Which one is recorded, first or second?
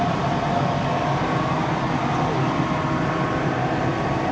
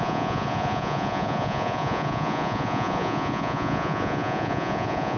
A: first